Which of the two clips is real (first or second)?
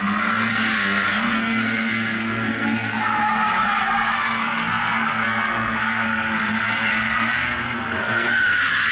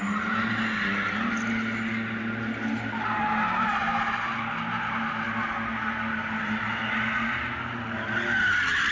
second